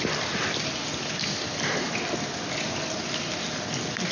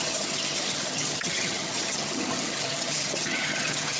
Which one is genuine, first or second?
first